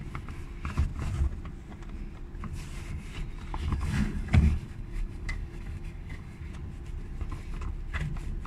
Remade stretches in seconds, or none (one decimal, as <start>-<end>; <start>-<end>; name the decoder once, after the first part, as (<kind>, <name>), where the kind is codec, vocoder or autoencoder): 3.5-6.5 (codec, DAC)